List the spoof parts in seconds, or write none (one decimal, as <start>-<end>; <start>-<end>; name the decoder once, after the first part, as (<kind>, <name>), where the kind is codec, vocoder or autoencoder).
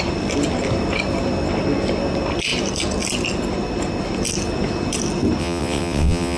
5.4-6.4 (vocoder, WaveNeXt)